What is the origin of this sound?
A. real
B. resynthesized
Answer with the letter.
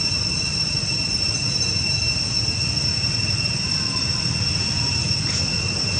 A